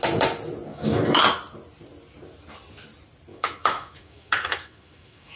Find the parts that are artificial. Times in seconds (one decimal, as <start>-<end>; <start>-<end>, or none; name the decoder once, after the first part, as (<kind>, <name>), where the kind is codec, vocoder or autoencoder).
0.7-1.2 (autoencoder, DAC-VAE); 3.3-5.4